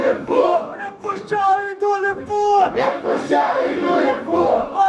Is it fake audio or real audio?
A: fake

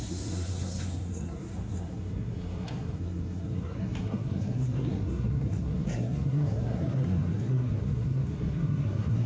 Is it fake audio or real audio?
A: fake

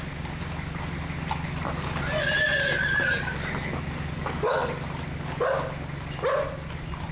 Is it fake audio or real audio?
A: real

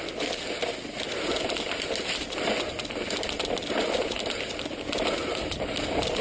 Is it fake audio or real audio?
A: real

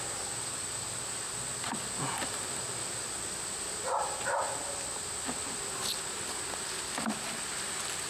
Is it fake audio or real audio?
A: real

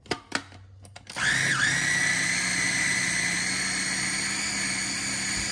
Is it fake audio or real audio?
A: real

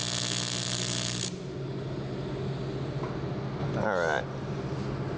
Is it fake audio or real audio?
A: real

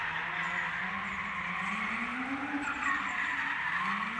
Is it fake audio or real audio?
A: real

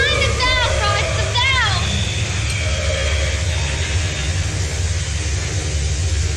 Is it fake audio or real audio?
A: real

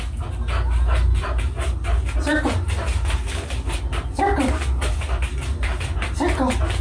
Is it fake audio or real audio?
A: real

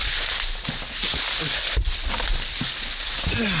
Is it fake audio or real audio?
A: real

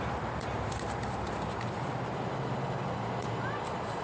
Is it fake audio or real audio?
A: real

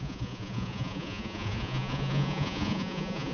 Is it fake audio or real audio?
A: fake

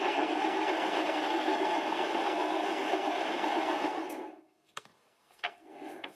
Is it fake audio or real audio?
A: fake